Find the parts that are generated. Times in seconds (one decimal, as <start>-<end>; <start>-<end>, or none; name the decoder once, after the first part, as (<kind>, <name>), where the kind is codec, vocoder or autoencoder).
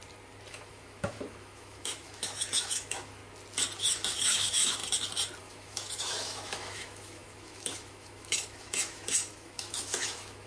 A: 0.5-3.2 (autoencoder, DAC-VAE); 3.8-4.8; 5.4-10.5